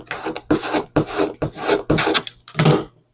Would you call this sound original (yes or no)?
yes